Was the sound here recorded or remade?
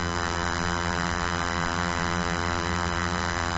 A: remade